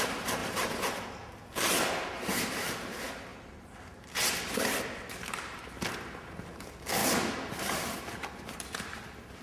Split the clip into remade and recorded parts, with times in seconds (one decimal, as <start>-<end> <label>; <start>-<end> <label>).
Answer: 0.0-9.4 recorded